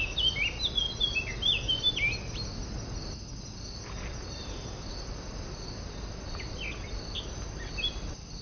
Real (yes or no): yes